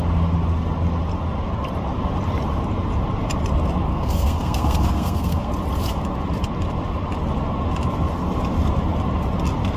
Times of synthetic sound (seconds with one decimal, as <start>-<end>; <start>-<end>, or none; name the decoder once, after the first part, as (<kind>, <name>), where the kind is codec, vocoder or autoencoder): 3.9-5.5 (codec, SNAC)